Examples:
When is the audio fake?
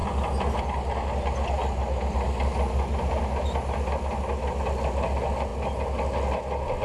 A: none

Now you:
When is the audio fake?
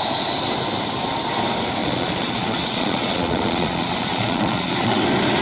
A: 1.8-5.0 (vocoder, Vocos)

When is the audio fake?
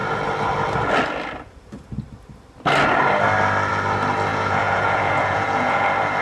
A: 4.3-5.8 (vocoder, Vocos)